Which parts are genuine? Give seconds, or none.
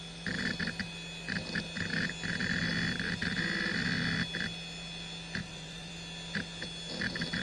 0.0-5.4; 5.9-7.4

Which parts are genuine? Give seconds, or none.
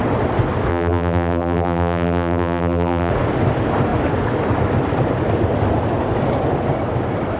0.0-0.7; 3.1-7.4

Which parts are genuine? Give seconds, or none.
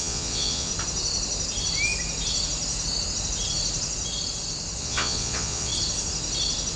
0.7-4.8; 5.7-6.8